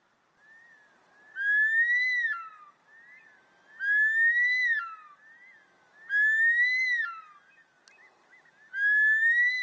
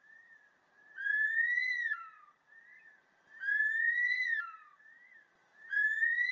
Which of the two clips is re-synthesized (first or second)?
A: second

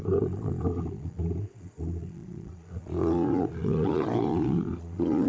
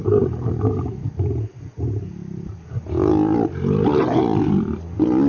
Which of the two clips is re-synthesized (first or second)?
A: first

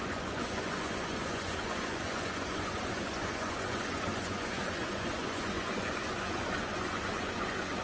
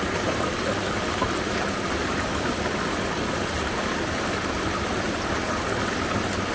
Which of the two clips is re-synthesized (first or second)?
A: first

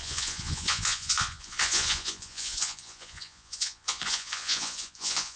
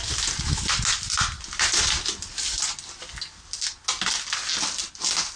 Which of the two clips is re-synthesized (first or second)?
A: first